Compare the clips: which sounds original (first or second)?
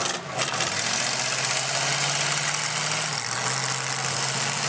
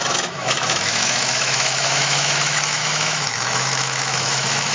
first